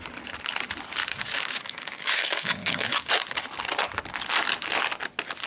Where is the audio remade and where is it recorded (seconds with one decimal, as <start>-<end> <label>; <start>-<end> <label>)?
0.0-1.0 recorded; 1.0-3.1 remade; 3.1-5.5 recorded